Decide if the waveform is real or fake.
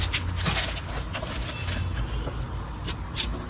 real